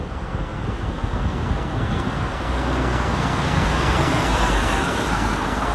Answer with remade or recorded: remade